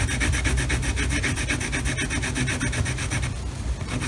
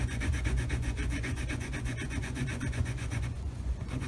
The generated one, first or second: second